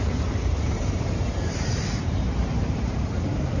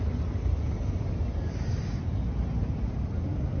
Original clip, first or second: second